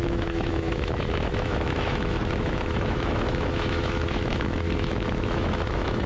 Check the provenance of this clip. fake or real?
fake